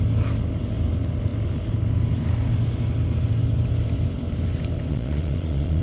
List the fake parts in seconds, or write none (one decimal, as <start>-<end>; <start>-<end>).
4.9-5.8